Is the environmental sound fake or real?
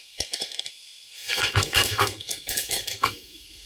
fake